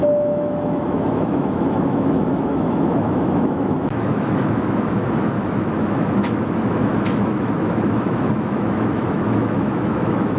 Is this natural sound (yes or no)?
no